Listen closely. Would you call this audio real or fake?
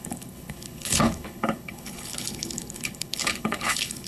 fake